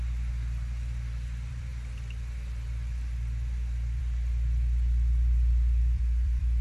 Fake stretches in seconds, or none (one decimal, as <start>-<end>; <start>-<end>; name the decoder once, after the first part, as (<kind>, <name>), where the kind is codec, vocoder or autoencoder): 0.0-1.7 (vocoder, BigVGAN v2); 4.0-6.6